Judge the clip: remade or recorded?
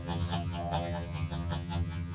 remade